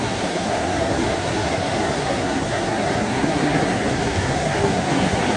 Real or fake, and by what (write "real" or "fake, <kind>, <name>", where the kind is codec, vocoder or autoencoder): fake, codec, SNAC